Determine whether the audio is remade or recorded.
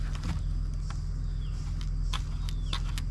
recorded